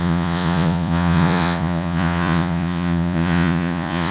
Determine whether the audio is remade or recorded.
remade